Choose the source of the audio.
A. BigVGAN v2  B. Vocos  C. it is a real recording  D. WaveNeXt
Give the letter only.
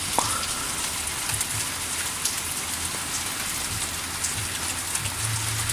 A